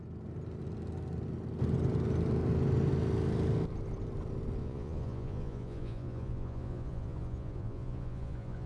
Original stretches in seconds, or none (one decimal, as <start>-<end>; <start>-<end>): 0.0-4.6